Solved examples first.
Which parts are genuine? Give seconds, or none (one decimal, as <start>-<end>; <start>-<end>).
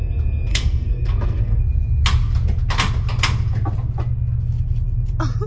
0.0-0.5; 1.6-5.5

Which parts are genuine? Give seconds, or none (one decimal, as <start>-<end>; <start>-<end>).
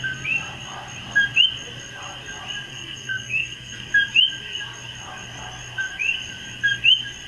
0.0-2.7; 3.9-7.3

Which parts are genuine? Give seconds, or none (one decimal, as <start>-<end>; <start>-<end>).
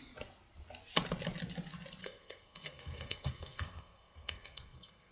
0.0-2.0